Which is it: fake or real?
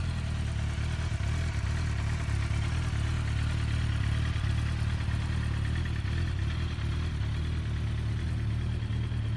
real